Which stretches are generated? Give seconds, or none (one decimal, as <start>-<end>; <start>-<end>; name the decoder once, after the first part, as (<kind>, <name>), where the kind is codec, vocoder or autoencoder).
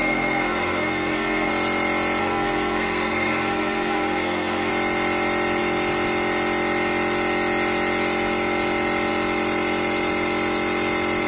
0.0-1.5 (codec, SNAC); 2.2-4.7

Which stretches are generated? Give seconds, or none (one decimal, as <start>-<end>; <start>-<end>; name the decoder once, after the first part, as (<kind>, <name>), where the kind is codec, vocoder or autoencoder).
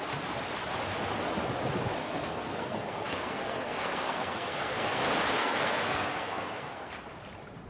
2.0-5.0 (codec, SNAC); 5.4-6.9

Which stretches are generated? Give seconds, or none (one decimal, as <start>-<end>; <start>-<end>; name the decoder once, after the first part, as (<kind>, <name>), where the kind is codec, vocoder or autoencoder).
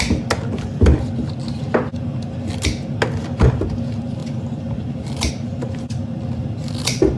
none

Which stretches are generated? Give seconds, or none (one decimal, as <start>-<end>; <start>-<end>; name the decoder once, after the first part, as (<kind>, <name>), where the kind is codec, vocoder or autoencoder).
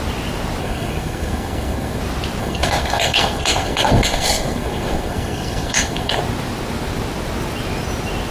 0.6-2.0 (codec, SNAC); 2.4-6.2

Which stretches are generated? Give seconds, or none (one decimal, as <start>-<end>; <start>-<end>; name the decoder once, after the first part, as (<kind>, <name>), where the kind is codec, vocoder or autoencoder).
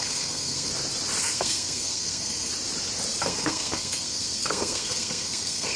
0.0-0.7 (codec, SNAC); 1.2-2.5; 3.2-5.8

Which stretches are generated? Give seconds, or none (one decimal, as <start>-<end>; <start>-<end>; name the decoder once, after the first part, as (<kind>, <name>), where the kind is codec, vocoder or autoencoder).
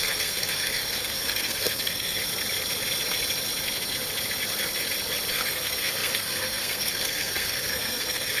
0.0-2.2 (codec, SNAC); 5.3-8.4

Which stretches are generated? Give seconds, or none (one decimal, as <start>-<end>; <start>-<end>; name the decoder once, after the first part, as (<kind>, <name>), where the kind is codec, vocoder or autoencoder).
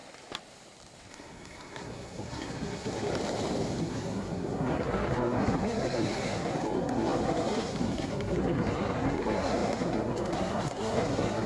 1.1-3.1 (codec, SNAC); 3.8-11.5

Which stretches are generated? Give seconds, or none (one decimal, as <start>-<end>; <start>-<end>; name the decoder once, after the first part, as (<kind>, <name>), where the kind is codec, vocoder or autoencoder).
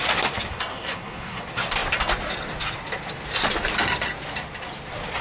0.7-1.4 (codec, SNAC)